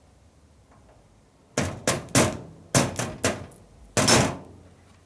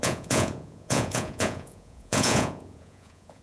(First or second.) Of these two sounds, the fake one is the second